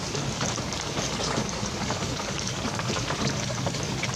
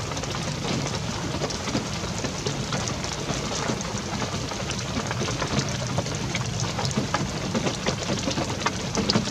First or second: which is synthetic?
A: first